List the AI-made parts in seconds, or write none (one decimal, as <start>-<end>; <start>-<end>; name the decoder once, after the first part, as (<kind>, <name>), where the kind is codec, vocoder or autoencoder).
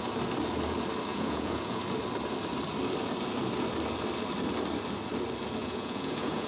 1.1-1.8 (vocoder, Vocos); 5.6-6.5